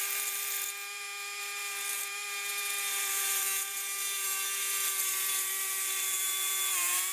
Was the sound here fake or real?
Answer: fake